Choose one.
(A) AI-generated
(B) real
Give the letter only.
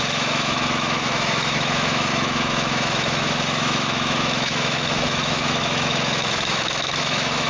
A